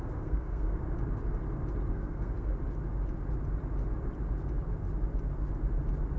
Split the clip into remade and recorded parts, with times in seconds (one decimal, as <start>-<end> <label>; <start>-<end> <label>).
0.0-0.8 remade; 0.8-1.9 recorded; 1.9-2.5 remade; 2.5-6.2 recorded